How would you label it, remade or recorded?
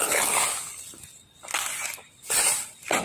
recorded